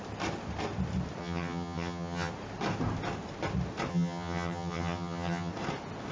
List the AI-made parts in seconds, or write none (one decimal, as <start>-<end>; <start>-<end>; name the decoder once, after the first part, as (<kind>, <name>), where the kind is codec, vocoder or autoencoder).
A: 1.2-2.3 (vocoder, HiFi-GAN); 3.9-5.5